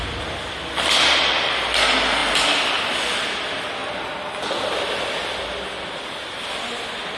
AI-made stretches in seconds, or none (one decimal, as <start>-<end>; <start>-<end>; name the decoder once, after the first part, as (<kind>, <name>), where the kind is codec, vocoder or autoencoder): none